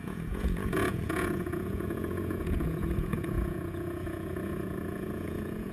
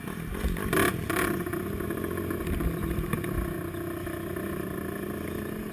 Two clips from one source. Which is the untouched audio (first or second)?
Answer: second